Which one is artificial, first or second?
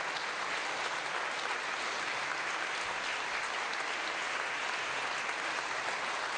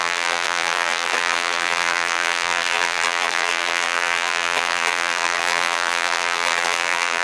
second